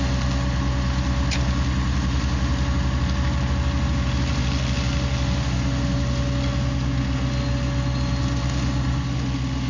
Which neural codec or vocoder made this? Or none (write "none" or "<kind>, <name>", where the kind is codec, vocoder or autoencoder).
none